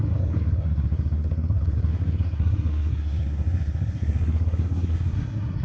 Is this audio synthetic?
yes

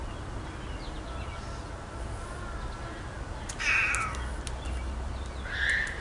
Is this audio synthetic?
no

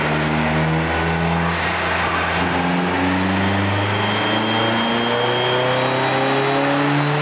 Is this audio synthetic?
no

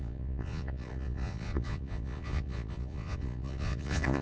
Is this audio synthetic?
yes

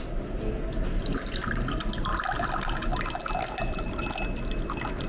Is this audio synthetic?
no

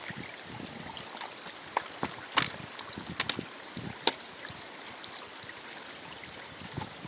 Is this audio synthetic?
no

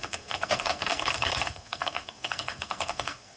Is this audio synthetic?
yes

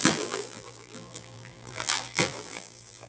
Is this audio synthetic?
yes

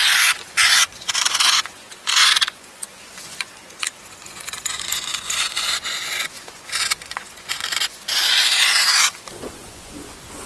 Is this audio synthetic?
yes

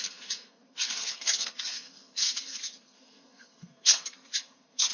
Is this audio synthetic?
yes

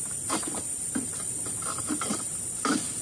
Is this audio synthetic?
yes